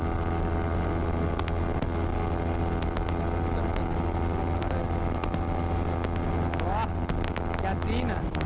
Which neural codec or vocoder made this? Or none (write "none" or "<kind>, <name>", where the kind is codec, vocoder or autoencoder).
none